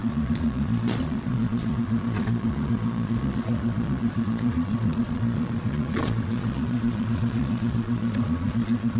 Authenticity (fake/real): fake